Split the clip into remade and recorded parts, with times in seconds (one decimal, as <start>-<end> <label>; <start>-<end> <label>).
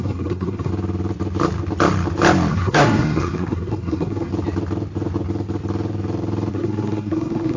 0.0-0.7 remade; 0.7-2.5 recorded; 2.5-4.3 remade; 4.3-6.5 recorded; 6.5-7.6 remade